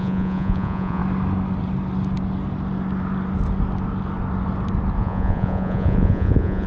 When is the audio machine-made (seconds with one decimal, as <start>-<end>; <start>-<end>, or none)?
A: 0.0-1.0; 5.0-6.7